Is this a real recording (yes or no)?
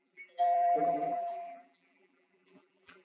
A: no